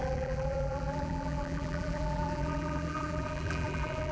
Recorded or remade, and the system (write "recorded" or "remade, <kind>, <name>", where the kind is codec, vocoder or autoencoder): remade, vocoder, BigVGAN v2